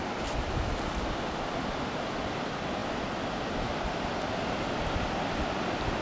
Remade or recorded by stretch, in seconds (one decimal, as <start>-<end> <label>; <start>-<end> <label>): 0.0-6.0 recorded